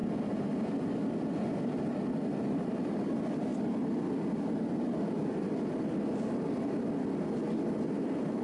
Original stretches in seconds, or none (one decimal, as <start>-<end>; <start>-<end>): 0.0-3.5; 5.9-8.4